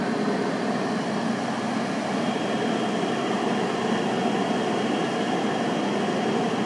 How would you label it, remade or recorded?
recorded